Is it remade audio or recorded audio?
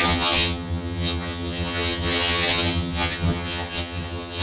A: remade